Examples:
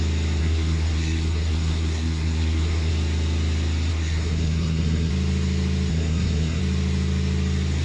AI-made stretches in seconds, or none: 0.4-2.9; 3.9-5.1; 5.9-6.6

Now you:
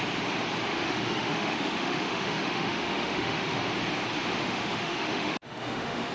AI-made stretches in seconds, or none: 0.7-3.6; 4.4-6.1